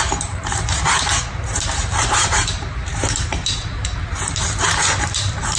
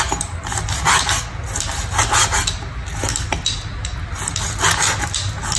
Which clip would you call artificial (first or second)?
first